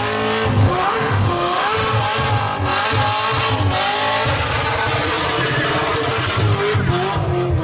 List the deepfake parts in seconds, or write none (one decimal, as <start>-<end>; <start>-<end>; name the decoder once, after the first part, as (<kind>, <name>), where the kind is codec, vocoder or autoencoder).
0.6-2.0 (autoencoder, DAC-VAE)